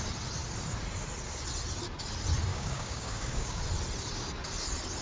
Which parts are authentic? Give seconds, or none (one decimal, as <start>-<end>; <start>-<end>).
0.0-2.5; 3.6-5.0